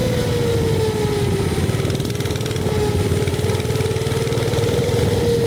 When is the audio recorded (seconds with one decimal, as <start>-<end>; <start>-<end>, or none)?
0.0-4.5; 5.0-5.5

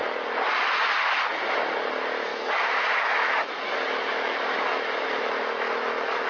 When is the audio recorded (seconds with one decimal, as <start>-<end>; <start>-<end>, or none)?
0.0-2.3

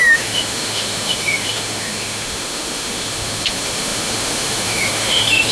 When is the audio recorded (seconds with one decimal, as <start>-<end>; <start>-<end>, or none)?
none

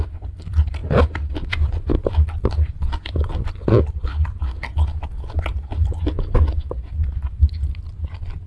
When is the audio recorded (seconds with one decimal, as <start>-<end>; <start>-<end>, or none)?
0.0-8.5

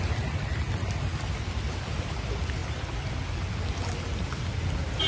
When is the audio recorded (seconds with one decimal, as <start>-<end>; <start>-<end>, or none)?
0.0-5.1